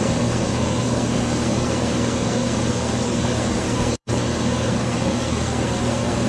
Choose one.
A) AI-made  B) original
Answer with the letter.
A